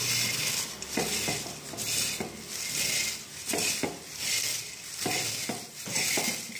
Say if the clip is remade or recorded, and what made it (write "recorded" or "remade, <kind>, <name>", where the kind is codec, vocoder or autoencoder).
recorded